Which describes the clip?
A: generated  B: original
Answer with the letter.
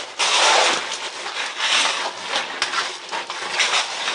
B